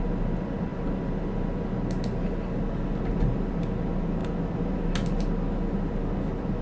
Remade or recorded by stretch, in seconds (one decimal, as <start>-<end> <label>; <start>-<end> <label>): 0.0-6.6 recorded